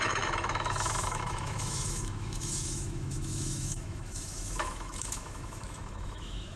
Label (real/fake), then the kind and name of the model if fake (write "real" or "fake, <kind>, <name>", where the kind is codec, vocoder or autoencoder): fake, autoencoder, DAC-VAE